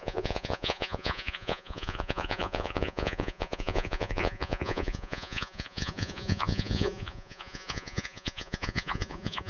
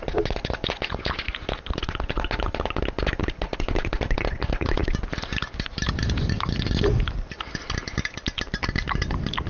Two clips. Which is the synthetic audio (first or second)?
first